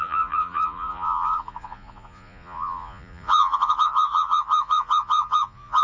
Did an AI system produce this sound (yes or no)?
yes